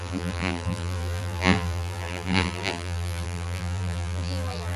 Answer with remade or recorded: remade